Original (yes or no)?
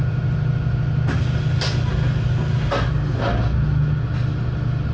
yes